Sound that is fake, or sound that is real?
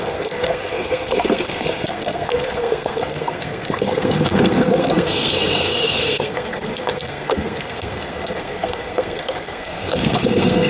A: fake